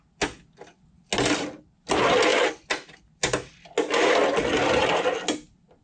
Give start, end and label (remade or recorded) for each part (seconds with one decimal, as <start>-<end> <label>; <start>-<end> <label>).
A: 0.0-5.8 recorded